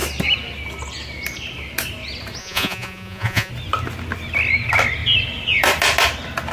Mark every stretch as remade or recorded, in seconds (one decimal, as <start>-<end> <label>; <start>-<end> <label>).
0.0-2.4 recorded; 2.4-3.5 remade; 3.5-6.5 recorded